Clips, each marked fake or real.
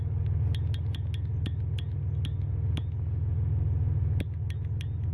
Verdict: real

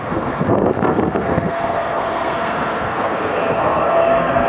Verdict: fake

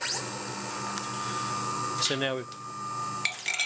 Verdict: real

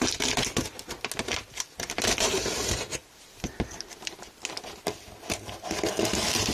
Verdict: real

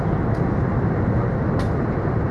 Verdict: real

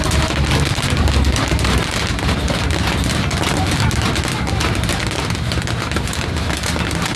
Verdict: real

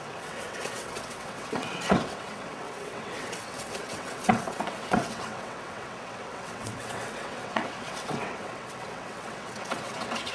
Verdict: fake